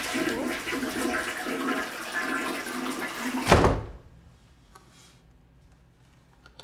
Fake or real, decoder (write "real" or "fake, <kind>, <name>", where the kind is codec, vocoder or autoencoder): real